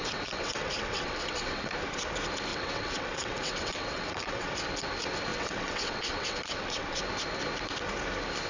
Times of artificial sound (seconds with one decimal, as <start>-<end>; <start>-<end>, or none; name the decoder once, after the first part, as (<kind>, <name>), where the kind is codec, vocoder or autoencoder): 0.0-1.7 (vocoder, WaveNeXt); 2.5-4.5; 5.3-7.0